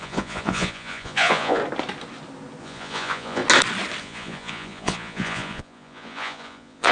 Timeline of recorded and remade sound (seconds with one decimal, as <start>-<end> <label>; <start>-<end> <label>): 0.0-1.6 remade; 1.6-2.6 recorded; 2.6-3.4 remade; 3.4-4.0 recorded; 4.0-6.9 remade